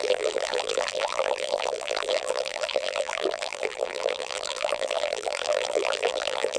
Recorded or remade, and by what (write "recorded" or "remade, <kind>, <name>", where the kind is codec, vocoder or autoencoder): remade, vocoder, BigVGAN v2